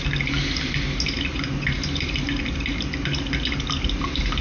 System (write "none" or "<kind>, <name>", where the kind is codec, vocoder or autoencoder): none